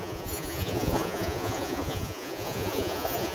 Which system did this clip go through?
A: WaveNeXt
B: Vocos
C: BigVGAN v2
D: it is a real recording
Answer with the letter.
B